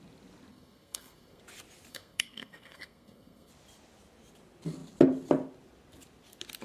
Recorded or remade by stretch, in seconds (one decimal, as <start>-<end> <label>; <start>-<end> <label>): 0.0-0.5 recorded; 0.5-1.4 remade; 1.4-1.9 recorded; 1.9-3.5 remade; 3.5-6.6 recorded